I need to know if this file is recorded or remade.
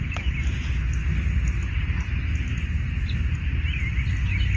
recorded